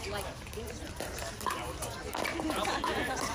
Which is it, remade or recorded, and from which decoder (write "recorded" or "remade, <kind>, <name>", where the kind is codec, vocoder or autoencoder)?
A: remade, vocoder, BigVGAN v2